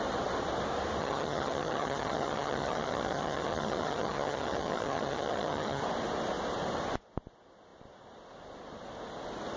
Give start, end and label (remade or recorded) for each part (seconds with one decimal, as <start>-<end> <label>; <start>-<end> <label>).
0.0-1.0 recorded; 1.0-5.8 remade; 5.8-9.6 recorded